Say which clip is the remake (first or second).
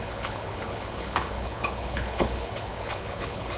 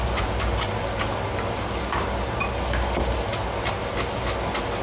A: first